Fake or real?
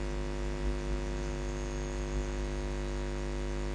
real